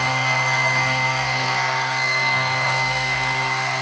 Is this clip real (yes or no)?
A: no